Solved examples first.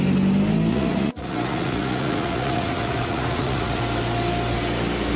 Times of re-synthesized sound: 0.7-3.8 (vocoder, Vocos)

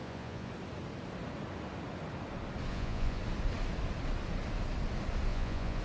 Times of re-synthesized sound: 0.0-0.5 (vocoder, Vocos); 2.7-3.2; 5.3-5.8